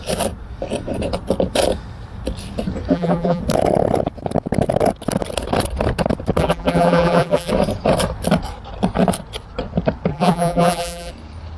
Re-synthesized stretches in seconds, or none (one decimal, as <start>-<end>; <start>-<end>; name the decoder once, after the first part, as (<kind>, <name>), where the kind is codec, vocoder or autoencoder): 2.9-3.4 (vocoder, BigVGAN v2); 6.4-7.5; 10.1-11.1